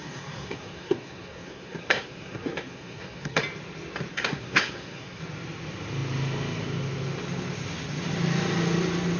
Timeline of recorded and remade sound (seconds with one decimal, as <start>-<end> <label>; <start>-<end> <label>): 0.0-3.4 remade; 3.4-4.1 recorded; 4.1-5.2 remade; 5.2-9.2 recorded